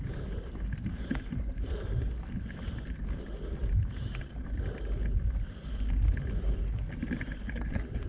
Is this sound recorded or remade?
remade